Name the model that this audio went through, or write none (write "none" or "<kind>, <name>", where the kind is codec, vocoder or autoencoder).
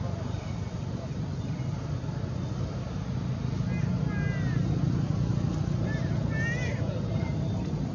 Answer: none